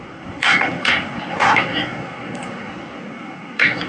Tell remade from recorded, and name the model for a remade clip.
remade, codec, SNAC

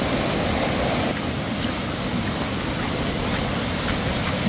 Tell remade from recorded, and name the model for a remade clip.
recorded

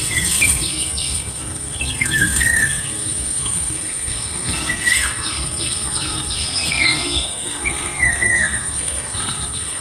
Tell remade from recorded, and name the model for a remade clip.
remade, codec, SNAC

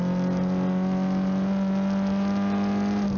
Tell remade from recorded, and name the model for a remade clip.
recorded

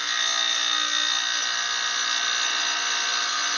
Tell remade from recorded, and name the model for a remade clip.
recorded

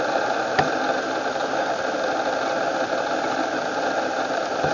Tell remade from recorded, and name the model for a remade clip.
recorded